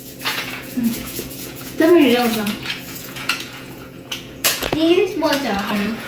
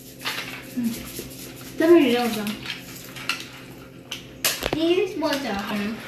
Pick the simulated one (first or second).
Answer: first